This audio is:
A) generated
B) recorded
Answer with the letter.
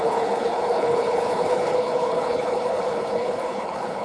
A